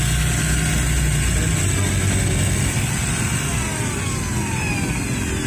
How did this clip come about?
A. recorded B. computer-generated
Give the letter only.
A